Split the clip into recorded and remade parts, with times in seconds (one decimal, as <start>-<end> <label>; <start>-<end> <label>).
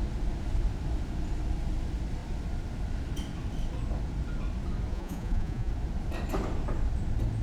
0.0-4.9 recorded; 4.9-5.7 remade; 5.7-7.4 recorded